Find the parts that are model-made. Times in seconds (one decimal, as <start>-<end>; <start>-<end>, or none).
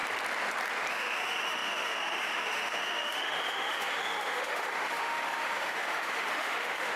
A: 0.9-7.0